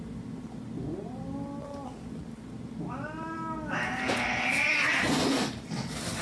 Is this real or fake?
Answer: real